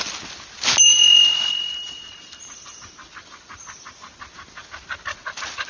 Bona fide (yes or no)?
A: yes